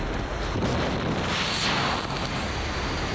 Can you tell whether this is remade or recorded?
recorded